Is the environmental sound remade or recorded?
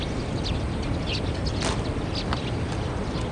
recorded